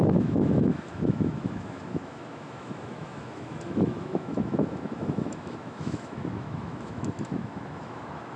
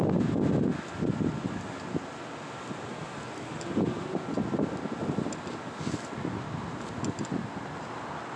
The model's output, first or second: first